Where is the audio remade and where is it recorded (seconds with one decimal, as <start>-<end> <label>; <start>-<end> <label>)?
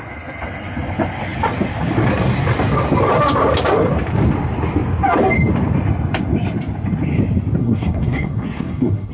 0.0-7.6 recorded; 7.6-9.1 remade